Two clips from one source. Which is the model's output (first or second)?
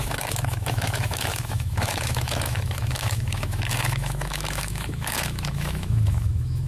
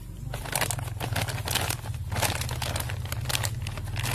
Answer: first